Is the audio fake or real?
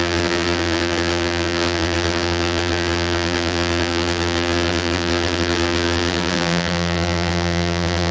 fake